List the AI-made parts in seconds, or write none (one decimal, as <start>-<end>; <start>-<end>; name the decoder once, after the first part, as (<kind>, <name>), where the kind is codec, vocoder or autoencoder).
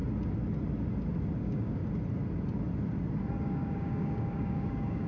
1.4-1.8 (codec, DAC); 3.4-5.1